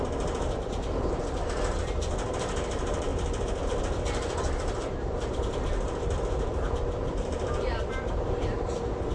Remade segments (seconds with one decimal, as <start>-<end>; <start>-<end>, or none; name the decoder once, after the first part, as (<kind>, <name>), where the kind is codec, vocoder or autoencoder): 0.0-3.1 (vocoder, BigVGAN v2); 3.8-9.1